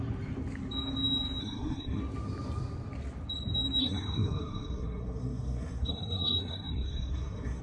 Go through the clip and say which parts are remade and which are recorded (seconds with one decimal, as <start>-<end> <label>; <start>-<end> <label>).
0.0-1.4 recorded; 1.4-2.0 remade; 2.0-3.8 recorded; 3.8-7.6 remade